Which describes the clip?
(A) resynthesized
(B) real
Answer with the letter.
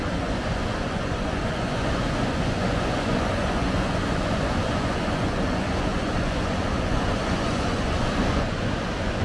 A